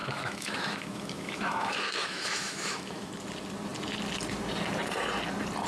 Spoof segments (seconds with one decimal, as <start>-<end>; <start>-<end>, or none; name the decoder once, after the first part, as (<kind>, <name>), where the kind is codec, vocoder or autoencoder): 0.0-3.1 (autoencoder, DAC-VAE)